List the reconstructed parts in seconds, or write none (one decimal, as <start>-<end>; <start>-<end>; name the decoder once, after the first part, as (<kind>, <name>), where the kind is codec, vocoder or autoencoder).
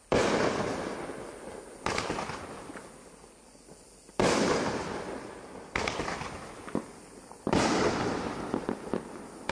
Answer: none